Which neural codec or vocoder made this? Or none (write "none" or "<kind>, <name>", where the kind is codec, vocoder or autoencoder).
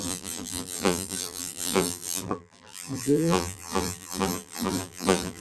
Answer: vocoder, BigVGAN v2